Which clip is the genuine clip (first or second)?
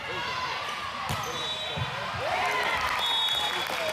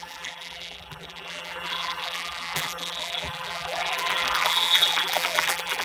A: first